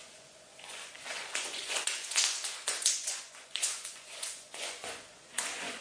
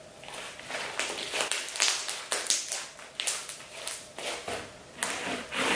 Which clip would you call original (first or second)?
second